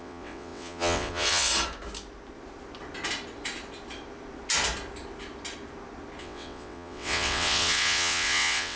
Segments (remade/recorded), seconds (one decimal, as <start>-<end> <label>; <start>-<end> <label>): 0.0-1.5 remade; 1.5-6.2 recorded; 6.2-8.8 remade